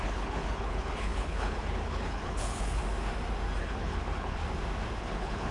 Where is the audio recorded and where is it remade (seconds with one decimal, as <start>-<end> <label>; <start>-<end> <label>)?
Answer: 0.0-2.8 remade; 2.8-3.6 recorded; 3.6-4.4 remade; 4.4-5.0 recorded; 5.0-5.5 remade